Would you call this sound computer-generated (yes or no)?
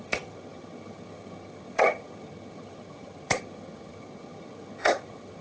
yes